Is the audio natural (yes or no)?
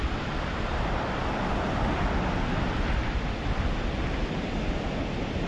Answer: yes